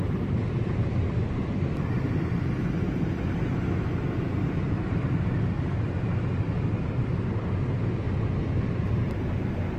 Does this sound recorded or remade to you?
recorded